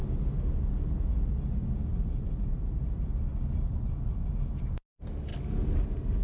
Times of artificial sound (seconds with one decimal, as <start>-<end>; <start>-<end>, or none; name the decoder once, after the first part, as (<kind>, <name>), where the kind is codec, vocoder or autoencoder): none